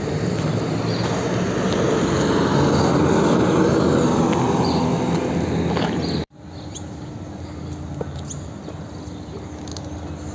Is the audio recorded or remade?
recorded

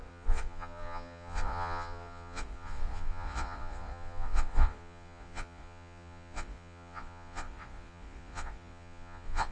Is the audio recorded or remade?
remade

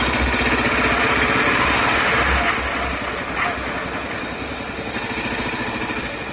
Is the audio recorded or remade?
recorded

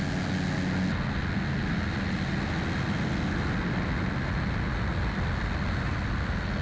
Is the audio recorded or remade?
recorded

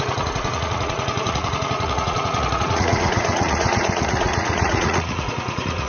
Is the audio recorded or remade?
remade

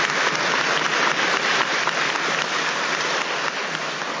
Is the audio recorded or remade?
recorded